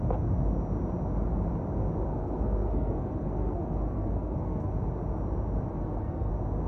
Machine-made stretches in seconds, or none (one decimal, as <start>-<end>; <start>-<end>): 2.1-4.7; 5.7-6.3